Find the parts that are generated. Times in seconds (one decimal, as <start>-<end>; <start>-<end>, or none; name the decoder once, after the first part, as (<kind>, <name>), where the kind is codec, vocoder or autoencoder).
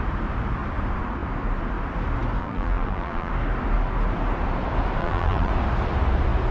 2.4-3.3 (vocoder, BigVGAN v2); 5.0-5.5